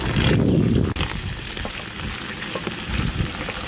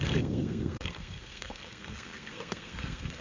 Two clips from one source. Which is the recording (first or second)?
first